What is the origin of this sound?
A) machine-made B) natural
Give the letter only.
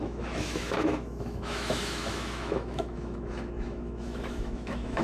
A